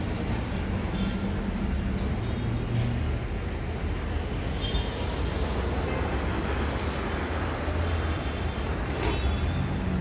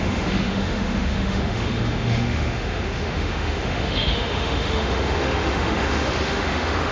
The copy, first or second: second